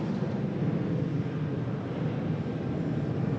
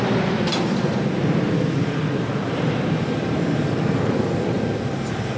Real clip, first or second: first